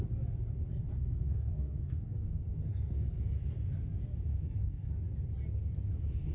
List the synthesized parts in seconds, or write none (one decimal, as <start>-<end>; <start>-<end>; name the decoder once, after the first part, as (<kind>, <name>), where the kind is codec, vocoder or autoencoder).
0.9-3.2 (codec, SNAC); 4.3-4.9